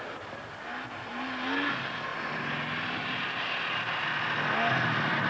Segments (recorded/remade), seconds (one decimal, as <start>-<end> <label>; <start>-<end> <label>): 0.0-5.3 recorded